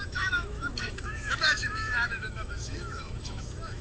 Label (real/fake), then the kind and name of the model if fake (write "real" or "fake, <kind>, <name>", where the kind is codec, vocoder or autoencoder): fake, autoencoder, DAC-VAE